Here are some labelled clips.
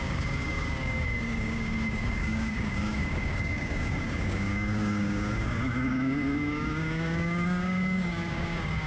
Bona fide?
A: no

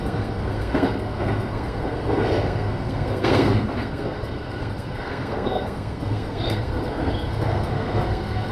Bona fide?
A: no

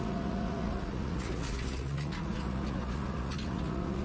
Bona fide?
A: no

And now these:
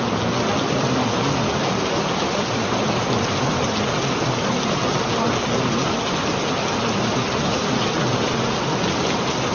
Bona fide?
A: yes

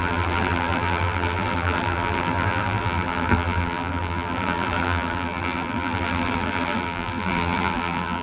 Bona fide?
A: no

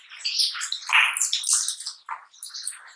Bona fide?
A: yes